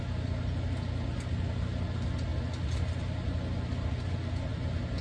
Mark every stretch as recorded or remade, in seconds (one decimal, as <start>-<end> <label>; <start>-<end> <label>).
0.0-5.0 recorded